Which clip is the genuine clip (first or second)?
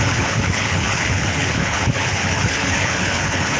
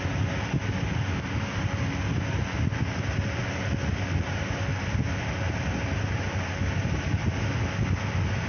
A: second